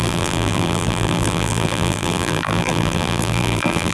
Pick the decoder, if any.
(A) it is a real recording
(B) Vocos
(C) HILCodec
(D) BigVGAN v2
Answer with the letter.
D